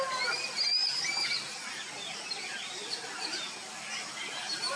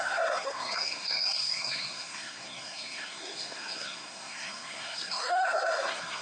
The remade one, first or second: second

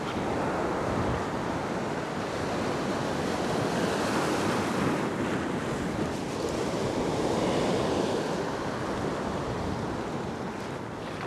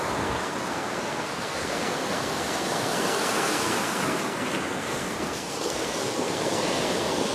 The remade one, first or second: second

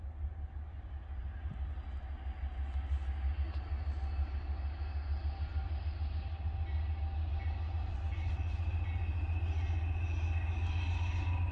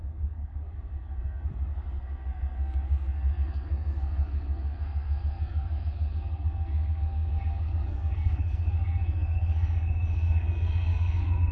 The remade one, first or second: second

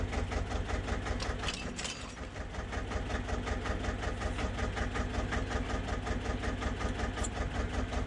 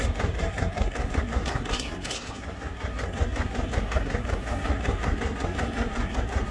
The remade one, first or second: second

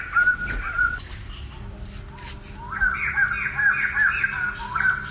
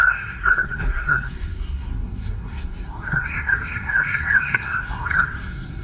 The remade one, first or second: second